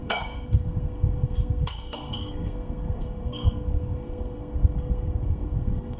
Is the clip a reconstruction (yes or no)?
yes